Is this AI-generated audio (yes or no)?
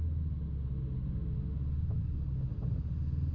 no